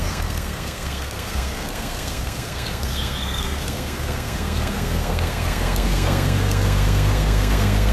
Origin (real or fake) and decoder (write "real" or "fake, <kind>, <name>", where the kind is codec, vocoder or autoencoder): fake, codec, SNAC